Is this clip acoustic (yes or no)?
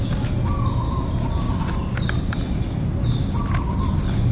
yes